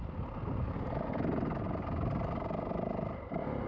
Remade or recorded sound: recorded